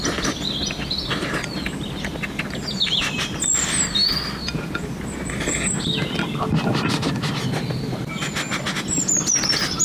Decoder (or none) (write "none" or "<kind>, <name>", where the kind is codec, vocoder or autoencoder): none